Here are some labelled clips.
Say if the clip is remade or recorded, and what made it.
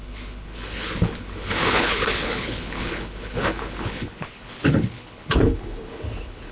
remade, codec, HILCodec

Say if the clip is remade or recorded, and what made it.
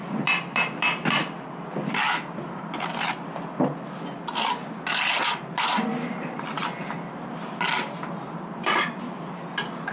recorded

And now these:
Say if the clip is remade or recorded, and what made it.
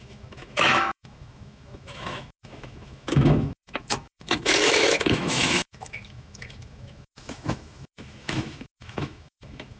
remade, autoencoder, DAC-VAE